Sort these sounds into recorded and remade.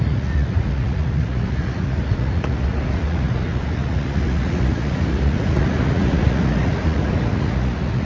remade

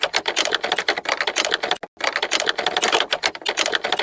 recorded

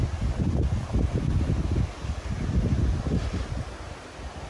recorded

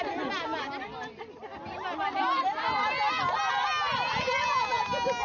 recorded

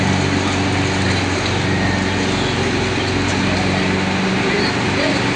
recorded